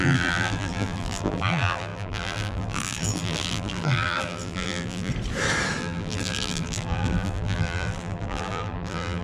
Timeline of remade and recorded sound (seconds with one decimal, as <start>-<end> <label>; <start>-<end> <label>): 0.0-5.1 remade; 5.1-5.8 recorded; 5.8-9.2 remade